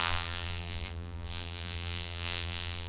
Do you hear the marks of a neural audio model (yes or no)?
yes